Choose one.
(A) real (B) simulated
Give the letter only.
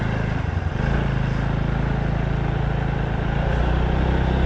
A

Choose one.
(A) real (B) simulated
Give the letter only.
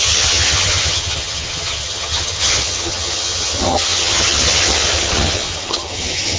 B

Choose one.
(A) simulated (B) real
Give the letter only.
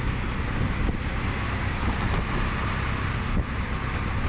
B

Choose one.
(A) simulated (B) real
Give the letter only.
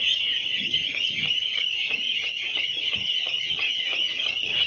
A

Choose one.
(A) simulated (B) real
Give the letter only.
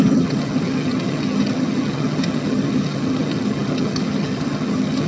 A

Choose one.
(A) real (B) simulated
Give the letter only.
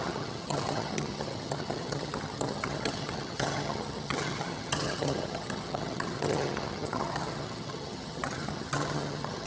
B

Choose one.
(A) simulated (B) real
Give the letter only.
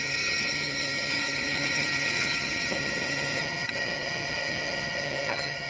A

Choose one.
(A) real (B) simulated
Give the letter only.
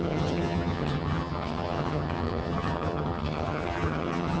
B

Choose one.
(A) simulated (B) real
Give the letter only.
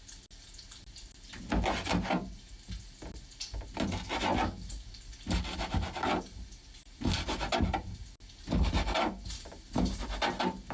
B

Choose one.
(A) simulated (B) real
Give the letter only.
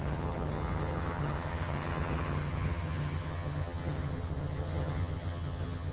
A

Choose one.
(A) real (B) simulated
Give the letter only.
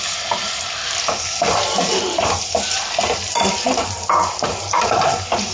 A